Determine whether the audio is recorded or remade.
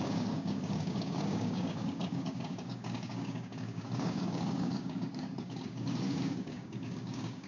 remade